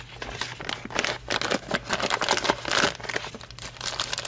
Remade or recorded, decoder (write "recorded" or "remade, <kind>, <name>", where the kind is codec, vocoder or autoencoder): recorded